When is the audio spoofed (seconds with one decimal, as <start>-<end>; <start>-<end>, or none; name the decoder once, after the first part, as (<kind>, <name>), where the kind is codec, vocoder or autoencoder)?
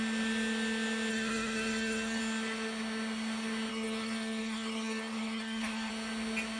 1.1-2.2 (codec, SNAC); 3.7-5.9